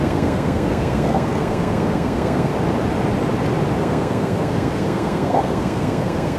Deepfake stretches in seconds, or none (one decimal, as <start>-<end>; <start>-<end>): 0.0-2.5; 3.8-6.4